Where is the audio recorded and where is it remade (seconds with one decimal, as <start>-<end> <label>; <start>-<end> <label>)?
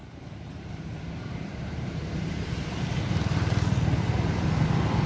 0.0-2.9 remade; 2.9-5.1 recorded